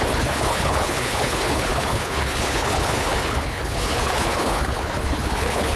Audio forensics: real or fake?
fake